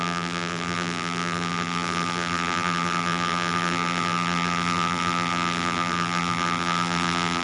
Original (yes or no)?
no